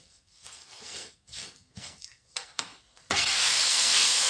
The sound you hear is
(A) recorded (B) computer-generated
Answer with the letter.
B